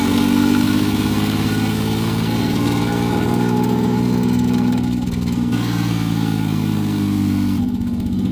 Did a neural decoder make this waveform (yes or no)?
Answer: yes